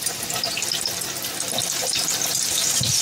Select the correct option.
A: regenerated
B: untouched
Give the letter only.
B